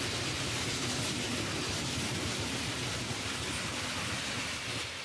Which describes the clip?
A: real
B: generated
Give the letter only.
A